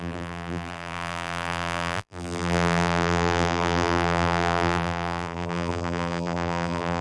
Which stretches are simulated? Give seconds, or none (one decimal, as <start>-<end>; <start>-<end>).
0.0-7.0